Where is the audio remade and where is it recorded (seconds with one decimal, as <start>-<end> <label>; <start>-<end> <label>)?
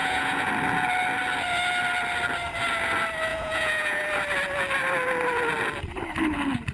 0.0-0.5 remade; 0.5-3.3 recorded; 3.3-4.0 remade; 4.0-6.7 recorded